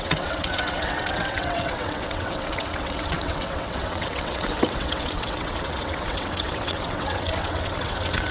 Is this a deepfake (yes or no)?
yes